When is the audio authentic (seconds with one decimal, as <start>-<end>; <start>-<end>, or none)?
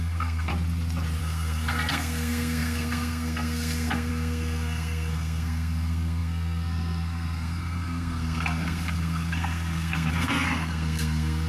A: 0.5-1.2